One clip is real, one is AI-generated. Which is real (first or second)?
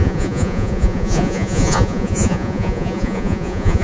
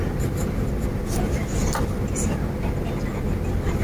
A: second